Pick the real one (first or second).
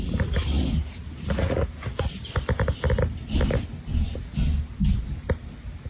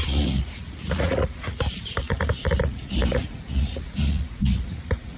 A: first